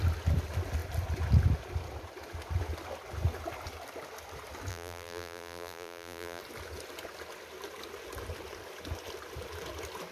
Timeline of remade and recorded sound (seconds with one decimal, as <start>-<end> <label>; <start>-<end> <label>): 0.0-4.7 recorded; 4.7-6.4 remade; 6.4-10.1 recorded